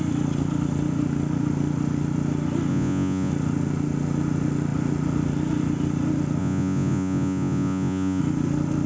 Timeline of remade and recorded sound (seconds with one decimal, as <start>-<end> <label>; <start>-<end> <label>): 0.0-2.7 recorded; 2.7-3.3 remade; 3.3-6.4 recorded; 6.4-8.2 remade; 8.2-8.9 recorded